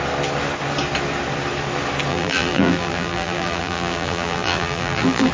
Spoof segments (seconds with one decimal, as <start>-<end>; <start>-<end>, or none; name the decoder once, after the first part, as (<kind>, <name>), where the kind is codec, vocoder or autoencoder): 2.1-5.3 (vocoder, BigVGAN v2)